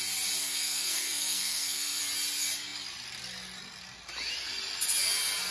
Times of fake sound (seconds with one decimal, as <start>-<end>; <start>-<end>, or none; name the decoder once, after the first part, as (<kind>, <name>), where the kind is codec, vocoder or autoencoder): 0.4-2.0 (codec, SNAC)